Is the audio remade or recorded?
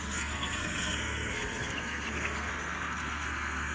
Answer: remade